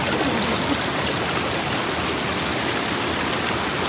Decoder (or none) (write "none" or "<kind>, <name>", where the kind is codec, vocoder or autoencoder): none